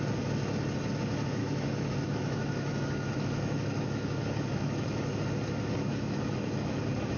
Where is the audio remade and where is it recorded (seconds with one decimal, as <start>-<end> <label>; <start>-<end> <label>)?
0.0-1.4 recorded; 1.4-5.2 remade; 5.2-5.9 recorded; 5.9-6.8 remade; 6.8-7.2 recorded